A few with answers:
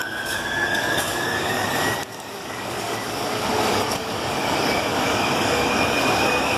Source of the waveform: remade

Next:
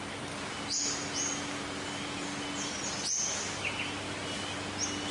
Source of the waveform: recorded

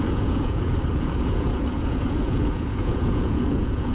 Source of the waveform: remade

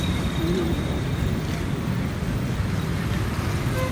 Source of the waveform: recorded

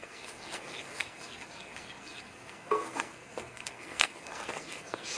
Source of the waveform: remade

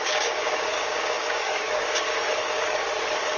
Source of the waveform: remade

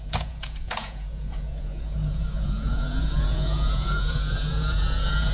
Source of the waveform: remade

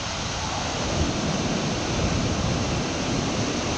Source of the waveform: recorded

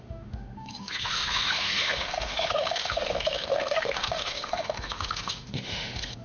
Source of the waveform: remade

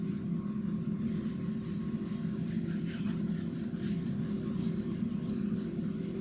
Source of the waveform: recorded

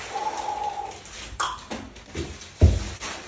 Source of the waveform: recorded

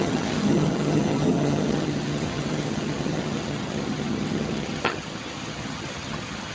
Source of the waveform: remade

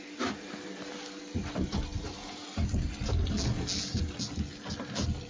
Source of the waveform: recorded